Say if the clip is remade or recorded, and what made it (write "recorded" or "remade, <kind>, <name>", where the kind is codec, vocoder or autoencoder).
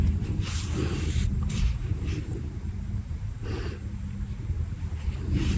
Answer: remade, vocoder, BigVGAN v2